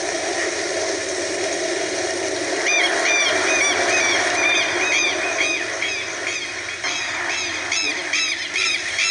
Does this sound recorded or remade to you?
recorded